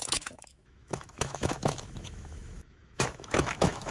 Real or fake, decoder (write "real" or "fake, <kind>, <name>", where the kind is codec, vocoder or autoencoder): fake, autoencoder, DAC-VAE